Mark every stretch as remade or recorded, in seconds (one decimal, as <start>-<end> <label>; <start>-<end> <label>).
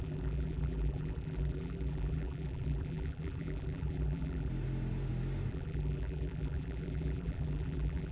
0.0-4.5 remade; 4.5-5.5 recorded; 5.5-8.1 remade